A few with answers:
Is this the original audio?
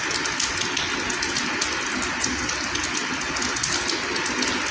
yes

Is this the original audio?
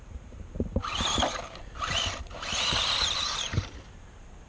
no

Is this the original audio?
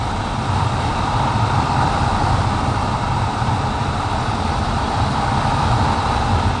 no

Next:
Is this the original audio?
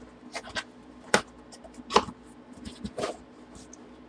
no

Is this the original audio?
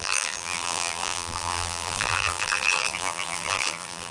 no